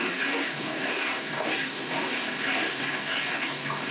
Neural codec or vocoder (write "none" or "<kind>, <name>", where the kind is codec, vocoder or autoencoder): codec, DAC